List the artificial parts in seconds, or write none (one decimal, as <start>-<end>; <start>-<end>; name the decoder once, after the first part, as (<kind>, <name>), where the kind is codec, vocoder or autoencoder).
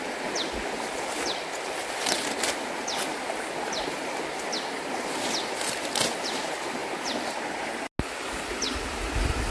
6.8-7.7 (vocoder, BigVGAN v2)